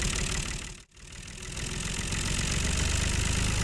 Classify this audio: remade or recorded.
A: recorded